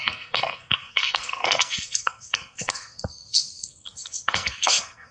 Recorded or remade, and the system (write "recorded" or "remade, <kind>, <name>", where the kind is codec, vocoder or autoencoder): remade, codec, SNAC